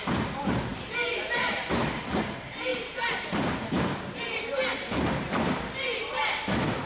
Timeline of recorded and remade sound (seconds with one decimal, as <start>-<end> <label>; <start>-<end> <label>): 0.0-6.9 remade